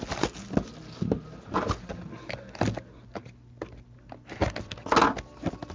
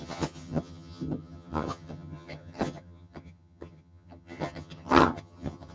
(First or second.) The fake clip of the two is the second